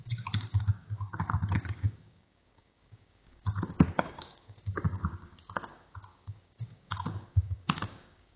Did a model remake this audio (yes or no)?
yes